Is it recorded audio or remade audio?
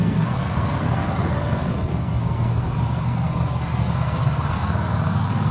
remade